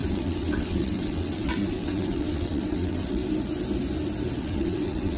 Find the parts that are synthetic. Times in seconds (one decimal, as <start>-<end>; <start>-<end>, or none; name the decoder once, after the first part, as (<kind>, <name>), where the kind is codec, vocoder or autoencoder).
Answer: 0.0-3.2 (vocoder, WaveNeXt); 4.4-5.2